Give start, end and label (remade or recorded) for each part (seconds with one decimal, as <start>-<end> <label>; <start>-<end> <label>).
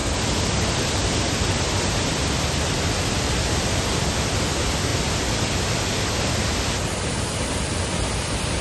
0.0-8.6 recorded